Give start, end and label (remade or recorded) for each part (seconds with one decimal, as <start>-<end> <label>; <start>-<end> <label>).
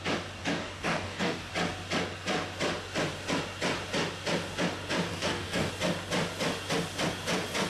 0.0-0.4 recorded; 0.4-1.5 remade; 1.5-5.1 recorded; 5.1-5.7 remade; 5.7-7.7 recorded